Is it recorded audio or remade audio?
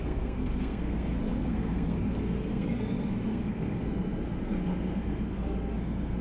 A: remade